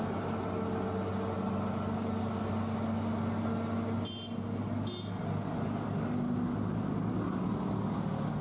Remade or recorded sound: recorded